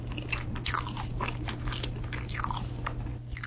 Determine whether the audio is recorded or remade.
recorded